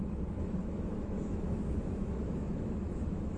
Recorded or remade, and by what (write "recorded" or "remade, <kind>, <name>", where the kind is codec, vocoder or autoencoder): remade, autoencoder, DAC-VAE